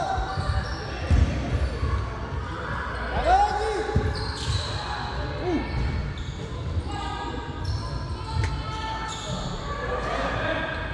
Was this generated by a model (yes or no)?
no